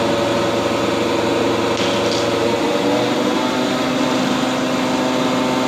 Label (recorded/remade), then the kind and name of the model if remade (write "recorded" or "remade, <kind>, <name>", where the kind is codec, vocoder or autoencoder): recorded